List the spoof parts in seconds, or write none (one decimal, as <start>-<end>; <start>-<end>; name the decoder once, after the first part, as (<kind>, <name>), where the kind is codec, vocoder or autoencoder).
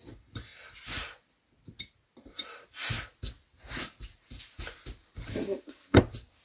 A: 5.3-6.0 (codec, SNAC)